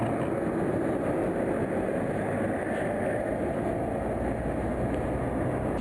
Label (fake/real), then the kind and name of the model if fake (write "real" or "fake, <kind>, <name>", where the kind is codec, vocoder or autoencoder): real